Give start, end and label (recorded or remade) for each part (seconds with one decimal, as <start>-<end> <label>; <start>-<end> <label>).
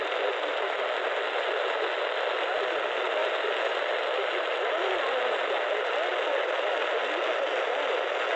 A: 0.0-8.4 recorded